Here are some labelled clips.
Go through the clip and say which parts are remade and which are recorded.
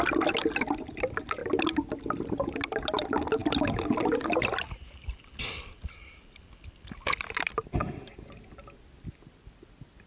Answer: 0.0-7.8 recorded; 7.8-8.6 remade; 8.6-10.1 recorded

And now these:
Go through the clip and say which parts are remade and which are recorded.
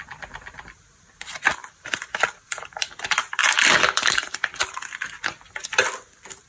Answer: 0.0-6.5 remade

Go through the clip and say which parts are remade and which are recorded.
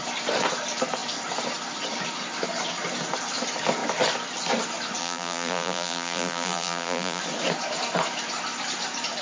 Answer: 0.0-5.0 recorded; 5.0-7.2 remade; 7.2-9.2 recorded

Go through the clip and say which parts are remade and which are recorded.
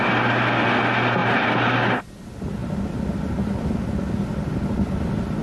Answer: 0.0-1.2 recorded; 1.2-2.0 remade; 2.0-2.6 recorded; 2.6-3.3 remade; 3.3-4.3 recorded; 4.3-5.4 remade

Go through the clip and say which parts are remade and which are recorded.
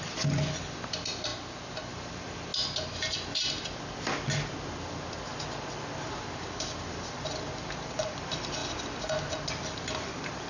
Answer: 0.0-1.3 remade; 1.3-1.9 recorded; 1.9-2.5 remade; 2.5-6.1 recorded; 6.1-8.6 remade; 8.6-9.5 recorded; 9.5-10.5 remade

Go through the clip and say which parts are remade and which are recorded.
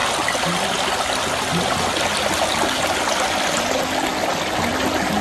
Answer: 0.0-5.2 recorded